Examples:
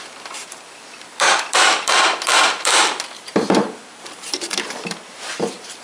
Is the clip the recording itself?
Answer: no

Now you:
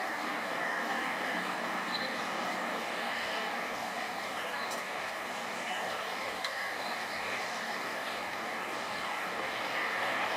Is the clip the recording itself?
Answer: no